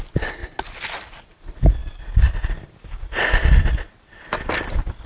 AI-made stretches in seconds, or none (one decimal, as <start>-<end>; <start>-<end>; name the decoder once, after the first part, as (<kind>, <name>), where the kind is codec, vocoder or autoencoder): none